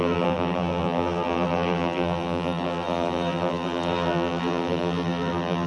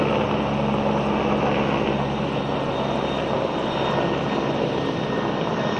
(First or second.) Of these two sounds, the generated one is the first